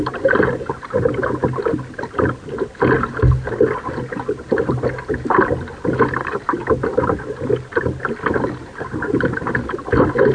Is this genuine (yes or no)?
yes